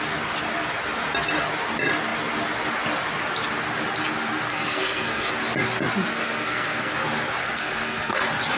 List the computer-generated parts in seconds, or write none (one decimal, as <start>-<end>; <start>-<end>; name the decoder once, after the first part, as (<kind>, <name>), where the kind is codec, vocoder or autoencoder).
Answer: 4.5-5.3 (codec, SNAC); 6.1-6.9; 7.4-8.2